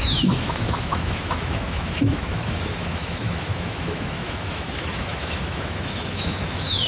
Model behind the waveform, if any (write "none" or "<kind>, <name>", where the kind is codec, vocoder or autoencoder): autoencoder, DAC-VAE